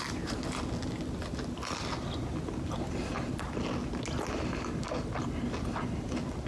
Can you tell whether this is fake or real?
real